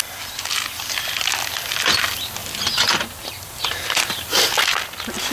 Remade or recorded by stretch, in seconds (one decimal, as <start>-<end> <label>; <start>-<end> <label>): 0.0-2.4 recorded; 2.4-4.5 remade; 4.5-5.3 recorded